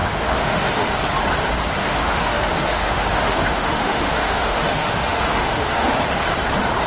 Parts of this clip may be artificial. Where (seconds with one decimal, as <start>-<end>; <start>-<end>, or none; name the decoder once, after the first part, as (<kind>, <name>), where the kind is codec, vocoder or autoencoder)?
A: 0.0-0.9 (autoencoder, DAC-VAE); 1.8-5.9